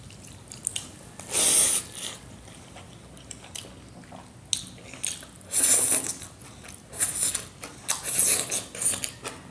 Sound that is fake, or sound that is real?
real